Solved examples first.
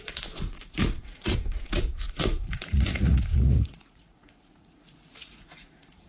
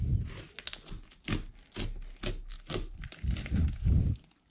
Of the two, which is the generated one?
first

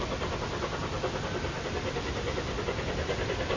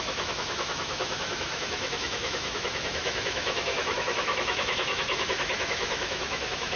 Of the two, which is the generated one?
second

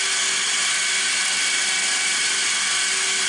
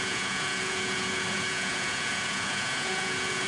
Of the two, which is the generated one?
second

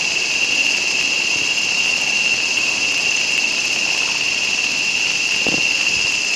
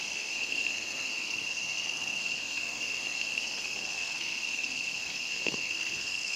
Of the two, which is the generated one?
second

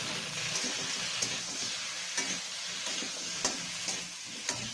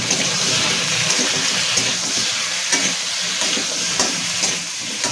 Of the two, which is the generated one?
second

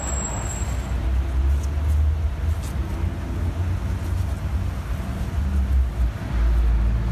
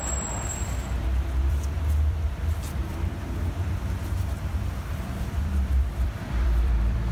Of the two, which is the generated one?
second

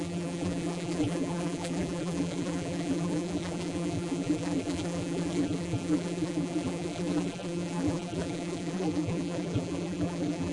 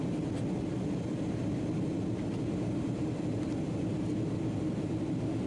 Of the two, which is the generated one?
first